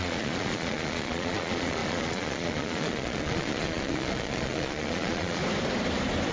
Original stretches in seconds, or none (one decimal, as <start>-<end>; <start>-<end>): 5.4-6.3